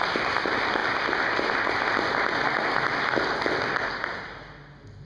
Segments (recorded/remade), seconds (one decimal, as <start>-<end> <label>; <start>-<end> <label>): 0.0-5.1 recorded